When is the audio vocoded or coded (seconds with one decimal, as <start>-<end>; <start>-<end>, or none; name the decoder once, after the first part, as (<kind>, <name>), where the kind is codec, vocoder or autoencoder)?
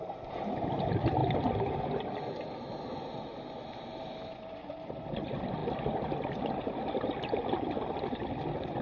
none